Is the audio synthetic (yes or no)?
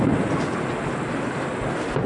no